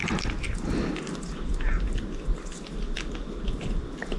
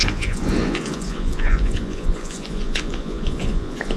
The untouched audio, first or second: first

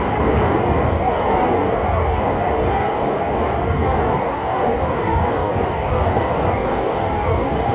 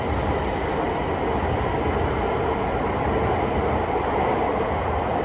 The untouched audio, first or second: second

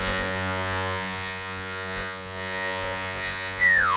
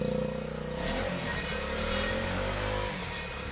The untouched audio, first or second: second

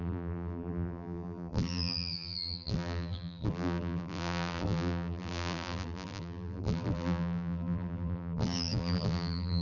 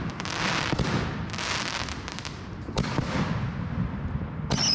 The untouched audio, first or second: second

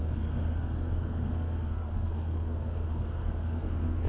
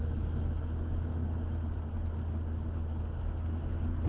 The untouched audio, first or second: second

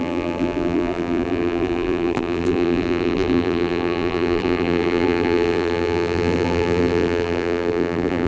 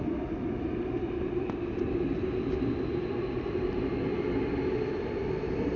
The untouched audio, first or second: second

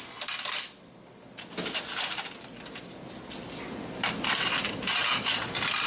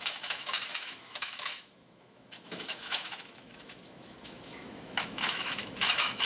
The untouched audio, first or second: first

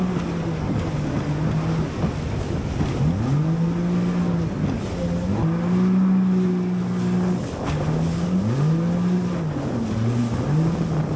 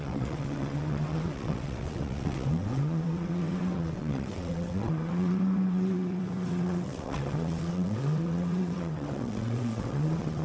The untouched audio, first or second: first